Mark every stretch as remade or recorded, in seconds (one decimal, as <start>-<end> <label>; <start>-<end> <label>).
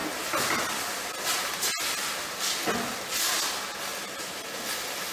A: 0.0-5.1 recorded